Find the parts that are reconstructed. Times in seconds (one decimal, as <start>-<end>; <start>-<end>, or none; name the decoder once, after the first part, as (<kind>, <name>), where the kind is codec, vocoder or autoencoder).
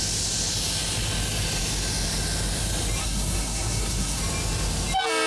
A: 3.0-4.2 (codec, SNAC)